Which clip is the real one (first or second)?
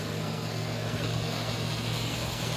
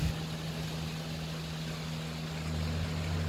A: second